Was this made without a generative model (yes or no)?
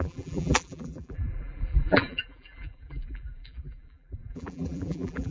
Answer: no